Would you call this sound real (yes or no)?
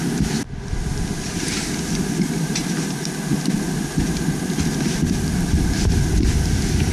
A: yes